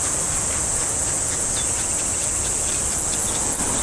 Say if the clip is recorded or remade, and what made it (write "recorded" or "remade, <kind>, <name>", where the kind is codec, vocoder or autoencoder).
recorded